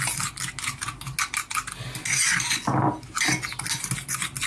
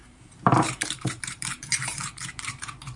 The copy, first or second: second